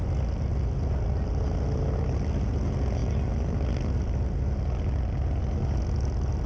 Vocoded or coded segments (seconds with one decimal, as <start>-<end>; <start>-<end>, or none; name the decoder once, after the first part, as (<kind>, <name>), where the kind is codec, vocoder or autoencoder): none